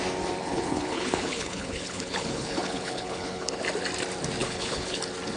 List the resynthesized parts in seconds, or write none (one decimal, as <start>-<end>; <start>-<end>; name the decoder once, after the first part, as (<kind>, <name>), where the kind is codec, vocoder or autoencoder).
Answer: 0.4-3.6 (codec, HILCodec); 4.4-5.0